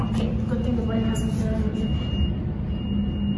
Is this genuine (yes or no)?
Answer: yes